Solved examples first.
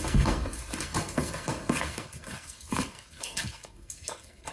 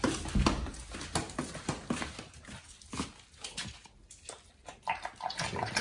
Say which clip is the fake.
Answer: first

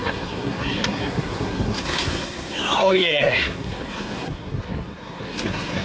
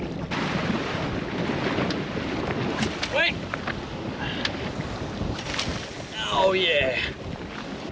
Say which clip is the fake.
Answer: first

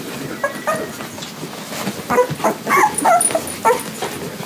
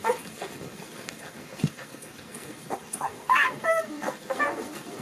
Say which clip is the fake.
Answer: second